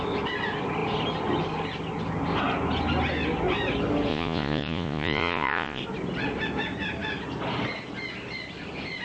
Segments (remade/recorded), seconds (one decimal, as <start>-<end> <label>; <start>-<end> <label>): 0.0-4.1 recorded; 4.1-5.8 remade; 5.8-9.0 recorded